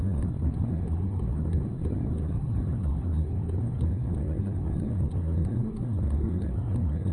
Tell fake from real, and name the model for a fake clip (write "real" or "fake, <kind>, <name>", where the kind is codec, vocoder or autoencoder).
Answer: fake, codec, SNAC